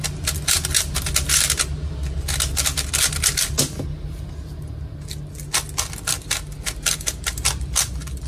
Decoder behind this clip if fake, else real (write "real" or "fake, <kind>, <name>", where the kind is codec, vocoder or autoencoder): real